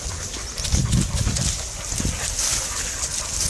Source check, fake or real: real